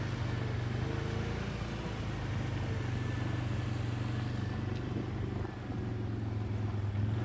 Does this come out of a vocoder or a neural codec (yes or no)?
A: no